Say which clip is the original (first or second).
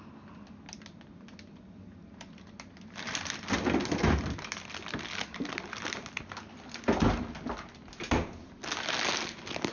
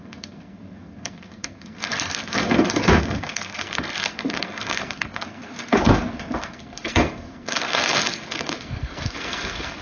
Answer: first